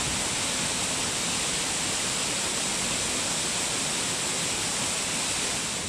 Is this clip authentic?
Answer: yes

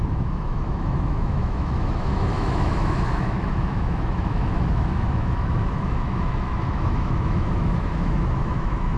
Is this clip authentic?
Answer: no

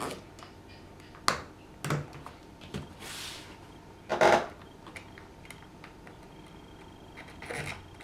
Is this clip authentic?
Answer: yes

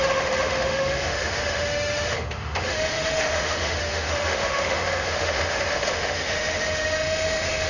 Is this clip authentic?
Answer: no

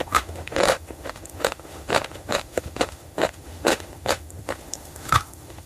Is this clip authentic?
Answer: no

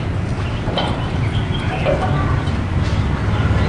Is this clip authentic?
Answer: yes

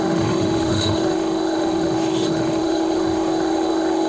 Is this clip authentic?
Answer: no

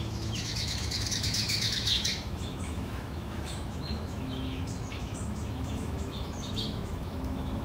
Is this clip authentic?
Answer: no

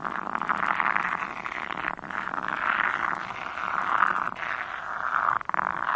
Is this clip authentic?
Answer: yes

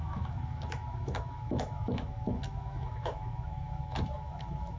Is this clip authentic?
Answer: no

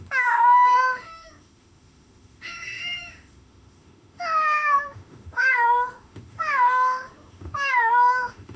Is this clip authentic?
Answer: no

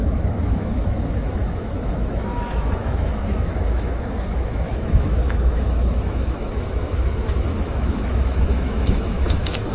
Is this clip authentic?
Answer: no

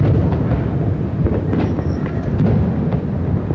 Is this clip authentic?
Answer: yes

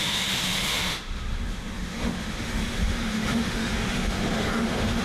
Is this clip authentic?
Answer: no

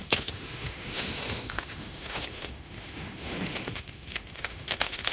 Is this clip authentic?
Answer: no